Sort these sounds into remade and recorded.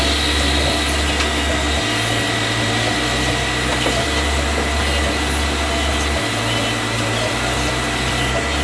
recorded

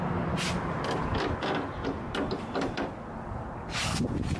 recorded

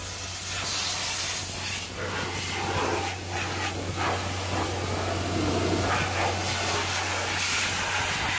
recorded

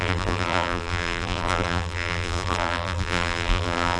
remade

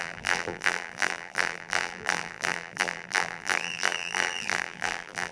remade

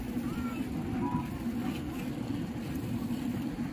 recorded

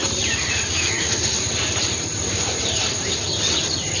remade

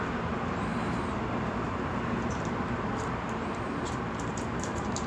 remade